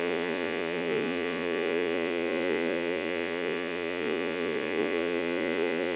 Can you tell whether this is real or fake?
fake